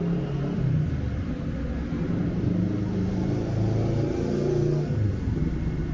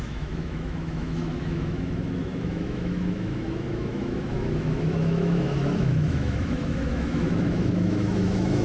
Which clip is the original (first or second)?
first